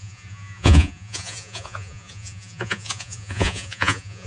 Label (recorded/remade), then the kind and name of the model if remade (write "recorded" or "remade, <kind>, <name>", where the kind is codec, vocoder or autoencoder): remade, vocoder, Vocos